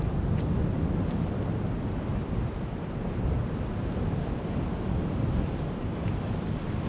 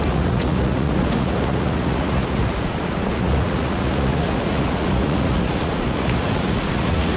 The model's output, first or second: second